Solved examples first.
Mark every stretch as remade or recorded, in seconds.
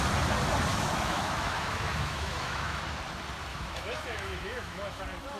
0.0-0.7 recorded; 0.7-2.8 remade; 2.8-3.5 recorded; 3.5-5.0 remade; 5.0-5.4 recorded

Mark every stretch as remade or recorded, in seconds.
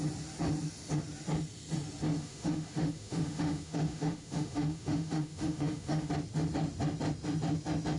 0.0-2.2 recorded; 2.2-6.1 remade; 6.1-8.0 recorded